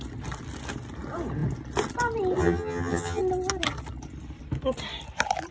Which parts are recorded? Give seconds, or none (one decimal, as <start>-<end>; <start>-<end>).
0.0-2.4; 3.2-5.5